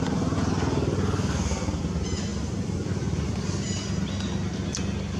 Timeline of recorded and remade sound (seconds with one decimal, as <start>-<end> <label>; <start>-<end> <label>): 0.0-2.3 recorded; 2.3-3.3 remade; 3.3-5.2 recorded